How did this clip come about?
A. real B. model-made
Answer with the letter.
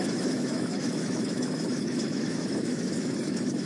B